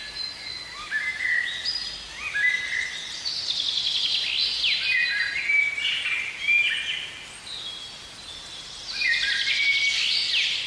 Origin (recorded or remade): recorded